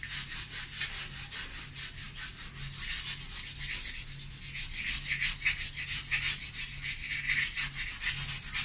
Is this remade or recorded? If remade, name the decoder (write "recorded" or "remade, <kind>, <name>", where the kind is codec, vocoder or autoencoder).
recorded